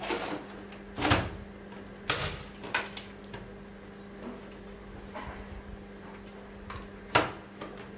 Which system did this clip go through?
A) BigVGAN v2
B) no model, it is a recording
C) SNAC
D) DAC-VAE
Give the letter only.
B